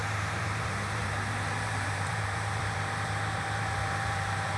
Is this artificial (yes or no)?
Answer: yes